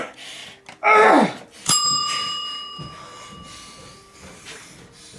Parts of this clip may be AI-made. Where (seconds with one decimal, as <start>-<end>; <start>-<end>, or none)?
0.0-0.4; 1.1-5.2